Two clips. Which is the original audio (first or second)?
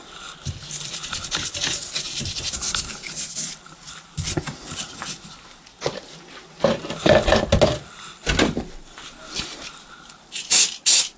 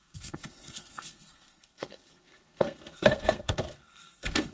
first